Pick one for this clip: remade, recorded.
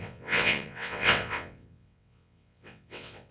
remade